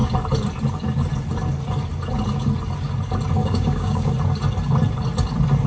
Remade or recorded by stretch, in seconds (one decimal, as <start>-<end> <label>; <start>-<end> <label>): 0.0-3.4 recorded; 3.4-4.1 remade; 4.1-5.7 recorded